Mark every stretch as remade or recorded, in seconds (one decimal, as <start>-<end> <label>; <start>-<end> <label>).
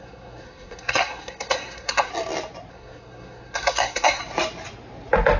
0.0-2.1 remade; 2.1-2.7 recorded; 2.7-4.2 remade; 4.2-5.4 recorded